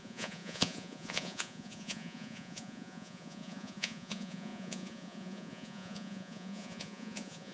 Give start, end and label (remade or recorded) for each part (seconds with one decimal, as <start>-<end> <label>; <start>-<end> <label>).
0.0-7.5 remade